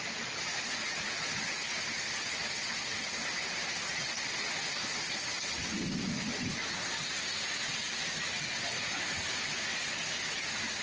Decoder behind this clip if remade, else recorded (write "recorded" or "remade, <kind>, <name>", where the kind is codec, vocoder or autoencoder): recorded